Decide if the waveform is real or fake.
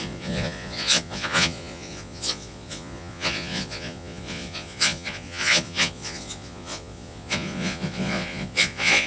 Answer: fake